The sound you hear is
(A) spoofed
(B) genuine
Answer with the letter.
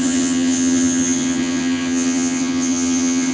A